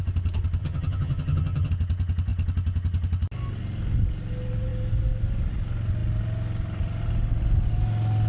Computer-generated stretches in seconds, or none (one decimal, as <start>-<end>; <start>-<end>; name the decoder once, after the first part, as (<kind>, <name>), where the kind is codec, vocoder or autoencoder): 0.6-1.7 (vocoder, HiFi-GAN)